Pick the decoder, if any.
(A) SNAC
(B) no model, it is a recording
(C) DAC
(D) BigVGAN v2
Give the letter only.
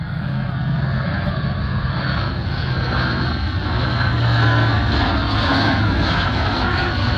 A